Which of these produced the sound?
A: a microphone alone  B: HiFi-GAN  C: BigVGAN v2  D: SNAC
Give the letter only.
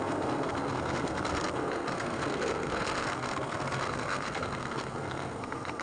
D